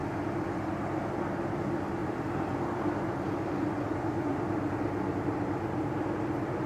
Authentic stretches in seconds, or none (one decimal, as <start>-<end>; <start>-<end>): 0.0-1.2; 4.3-6.7